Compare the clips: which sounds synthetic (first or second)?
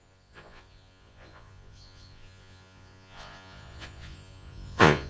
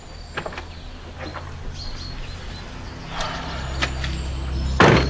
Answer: first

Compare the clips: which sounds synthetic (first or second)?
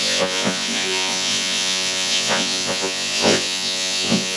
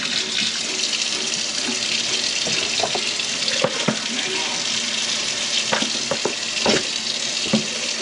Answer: first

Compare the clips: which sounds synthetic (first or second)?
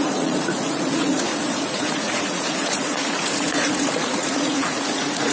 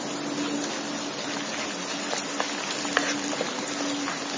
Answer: first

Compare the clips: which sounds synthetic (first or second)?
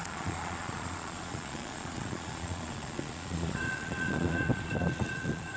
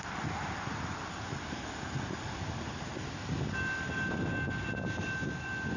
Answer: first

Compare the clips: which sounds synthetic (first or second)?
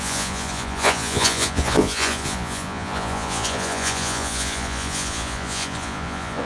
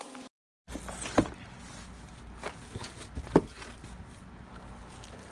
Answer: first